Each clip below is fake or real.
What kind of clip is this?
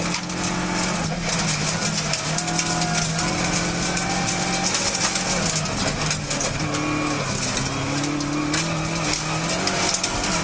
real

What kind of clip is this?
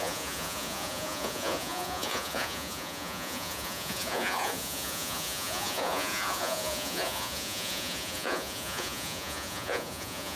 fake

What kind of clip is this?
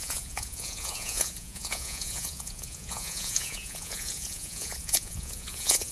fake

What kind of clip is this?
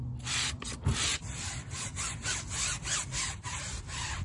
real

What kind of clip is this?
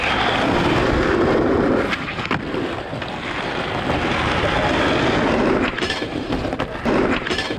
real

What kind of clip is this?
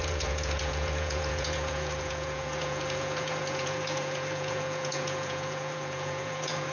fake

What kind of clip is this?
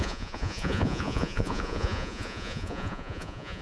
fake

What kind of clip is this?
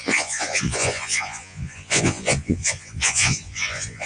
fake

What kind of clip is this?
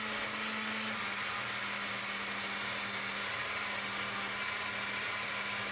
real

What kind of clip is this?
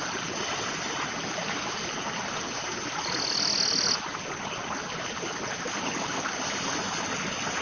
real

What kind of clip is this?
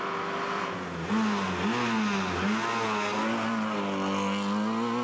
real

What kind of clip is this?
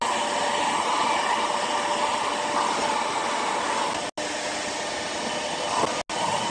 real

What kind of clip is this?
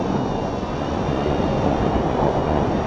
fake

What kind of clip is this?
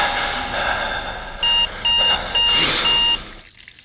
real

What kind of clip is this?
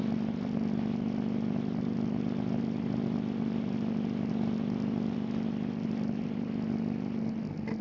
real